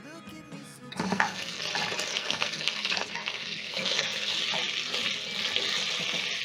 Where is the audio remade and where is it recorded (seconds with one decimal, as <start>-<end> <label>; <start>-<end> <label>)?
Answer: 0.0-0.6 recorded; 0.6-1.6 remade; 1.6-2.1 recorded; 2.1-4.3 remade; 4.3-6.4 recorded